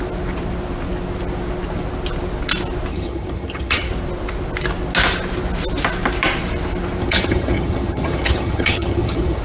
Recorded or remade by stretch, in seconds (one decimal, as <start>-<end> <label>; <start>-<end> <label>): 0.0-2.9 recorded; 2.9-3.9 remade; 3.9-7.0 recorded; 7.0-9.4 remade